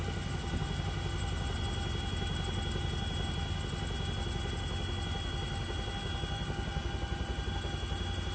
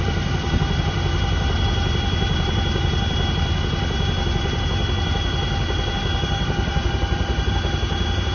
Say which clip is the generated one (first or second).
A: second